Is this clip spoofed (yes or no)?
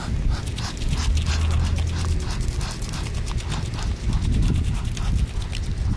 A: no